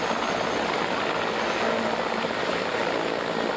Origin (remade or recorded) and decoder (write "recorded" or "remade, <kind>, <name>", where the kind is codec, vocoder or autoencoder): recorded